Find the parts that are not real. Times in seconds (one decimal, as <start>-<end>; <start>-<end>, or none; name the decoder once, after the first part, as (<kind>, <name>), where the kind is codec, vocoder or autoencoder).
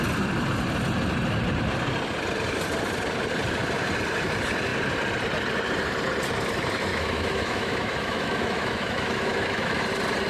6.9-9.8 (autoencoder, DAC-VAE)